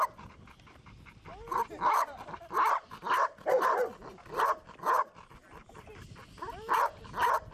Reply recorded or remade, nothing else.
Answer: recorded